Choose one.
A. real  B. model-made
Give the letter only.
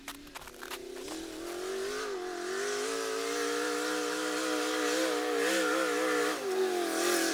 A